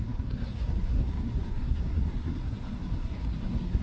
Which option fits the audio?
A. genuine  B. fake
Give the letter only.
B